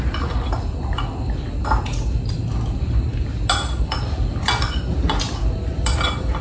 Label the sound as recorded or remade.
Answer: recorded